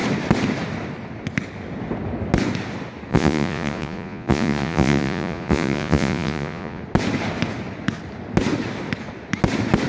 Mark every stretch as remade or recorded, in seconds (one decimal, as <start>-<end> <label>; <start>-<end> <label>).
0.0-3.1 recorded; 3.1-6.8 remade; 6.8-9.9 recorded